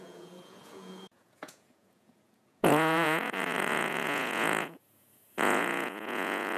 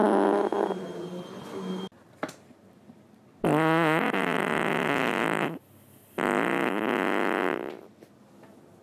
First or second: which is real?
second